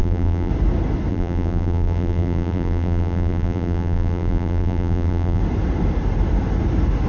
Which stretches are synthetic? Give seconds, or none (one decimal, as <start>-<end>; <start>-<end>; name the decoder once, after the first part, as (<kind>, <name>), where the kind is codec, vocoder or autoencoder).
0.0-0.5 (vocoder, BigVGAN v2); 1.1-5.4